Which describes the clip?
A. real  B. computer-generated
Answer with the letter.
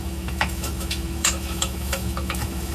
B